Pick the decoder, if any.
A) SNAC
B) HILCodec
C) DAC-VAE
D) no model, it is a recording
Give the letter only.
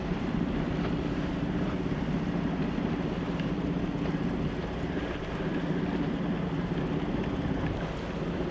D